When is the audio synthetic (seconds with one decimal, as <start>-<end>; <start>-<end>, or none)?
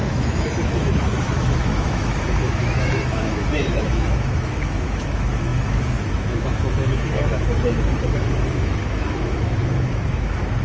0.0-10.6